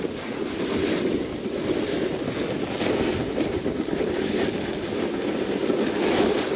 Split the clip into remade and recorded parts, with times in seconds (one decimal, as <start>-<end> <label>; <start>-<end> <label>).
0.0-3.2 recorded; 3.2-4.6 remade; 4.6-6.6 recorded